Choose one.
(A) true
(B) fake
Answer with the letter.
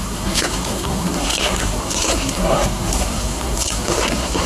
B